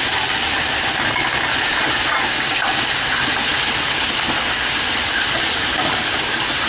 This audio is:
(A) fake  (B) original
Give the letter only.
B